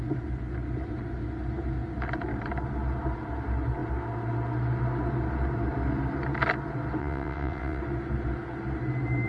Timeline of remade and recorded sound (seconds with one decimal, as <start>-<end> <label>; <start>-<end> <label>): 0.0-7.0 recorded; 7.0-7.8 remade; 7.8-9.3 recorded